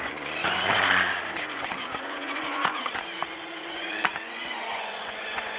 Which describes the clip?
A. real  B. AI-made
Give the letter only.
B